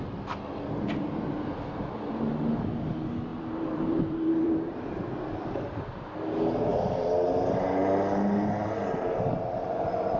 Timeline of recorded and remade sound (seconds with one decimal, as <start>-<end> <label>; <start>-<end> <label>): 0.0-3.3 recorded; 3.3-5.8 remade; 5.8-6.7 recorded; 6.7-7.2 remade; 7.2-10.2 recorded